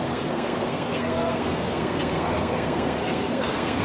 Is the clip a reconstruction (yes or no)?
yes